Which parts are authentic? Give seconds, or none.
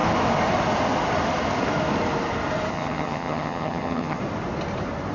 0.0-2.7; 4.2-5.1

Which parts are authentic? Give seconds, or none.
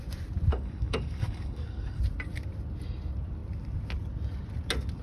0.0-0.5; 2.0-5.0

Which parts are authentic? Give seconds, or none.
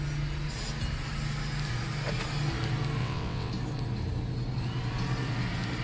0.0-3.0; 3.5-5.8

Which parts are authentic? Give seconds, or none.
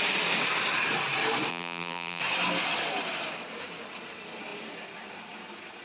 0.0-1.5; 2.2-5.8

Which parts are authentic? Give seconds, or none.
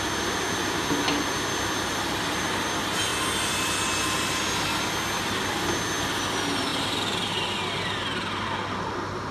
0.0-6.7; 7.3-9.3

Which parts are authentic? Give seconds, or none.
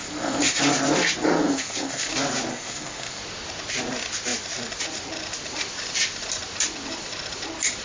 0.6-1.4; 2.1-2.5; 3.2-7.8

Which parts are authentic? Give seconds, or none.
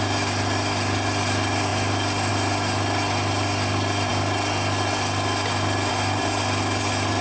0.0-7.2